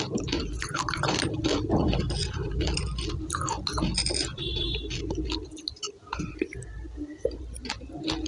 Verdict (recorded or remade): recorded